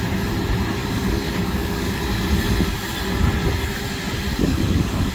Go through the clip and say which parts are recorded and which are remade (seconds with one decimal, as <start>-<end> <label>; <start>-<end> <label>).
0.0-0.8 recorded; 0.8-2.0 remade; 2.0-4.3 recorded; 4.3-5.1 remade